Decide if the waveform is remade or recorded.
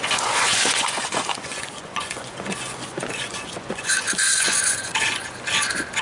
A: remade